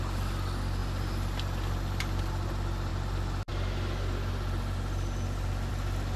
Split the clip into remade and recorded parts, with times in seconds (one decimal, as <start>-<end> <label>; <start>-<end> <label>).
0.0-6.2 recorded